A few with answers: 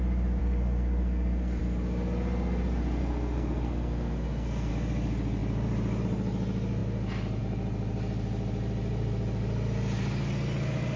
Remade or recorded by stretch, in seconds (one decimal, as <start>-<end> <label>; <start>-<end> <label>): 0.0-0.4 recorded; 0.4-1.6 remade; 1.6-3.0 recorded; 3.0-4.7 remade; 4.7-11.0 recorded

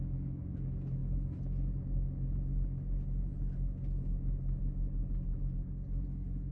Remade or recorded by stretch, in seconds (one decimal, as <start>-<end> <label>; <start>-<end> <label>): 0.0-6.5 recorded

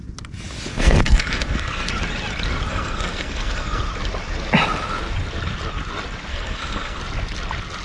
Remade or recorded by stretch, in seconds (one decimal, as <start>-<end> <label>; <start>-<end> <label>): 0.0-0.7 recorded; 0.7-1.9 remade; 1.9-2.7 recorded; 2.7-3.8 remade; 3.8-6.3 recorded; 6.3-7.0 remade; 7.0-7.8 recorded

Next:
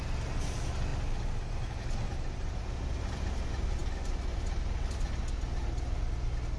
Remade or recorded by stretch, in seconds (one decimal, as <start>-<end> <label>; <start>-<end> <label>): 0.0-6.6 recorded

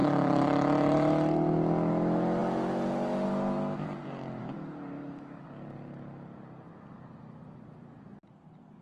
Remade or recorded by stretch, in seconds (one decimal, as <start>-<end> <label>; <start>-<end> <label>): 0.0-1.1 remade; 1.1-8.8 recorded

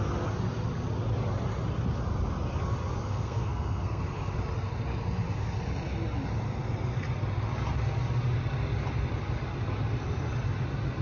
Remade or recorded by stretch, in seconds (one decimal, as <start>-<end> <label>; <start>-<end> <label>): 0.0-3.0 recorded; 3.0-4.0 remade; 4.0-11.0 recorded

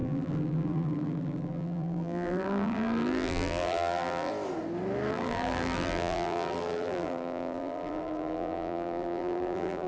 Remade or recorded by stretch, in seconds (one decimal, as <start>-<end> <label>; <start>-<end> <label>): 0.0-4.3 remade; 4.3-5.1 recorded; 5.1-9.9 remade